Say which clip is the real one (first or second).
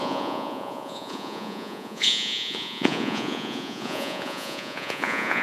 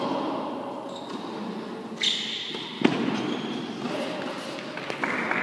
second